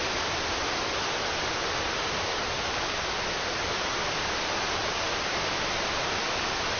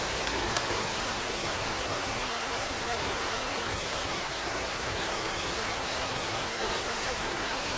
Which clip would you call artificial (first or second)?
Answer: second